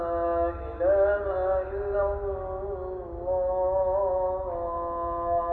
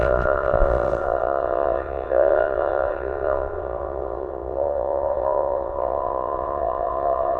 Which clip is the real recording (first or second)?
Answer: first